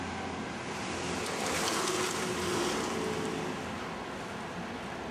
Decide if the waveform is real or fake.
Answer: real